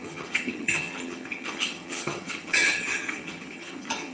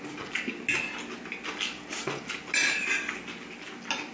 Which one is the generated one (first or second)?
first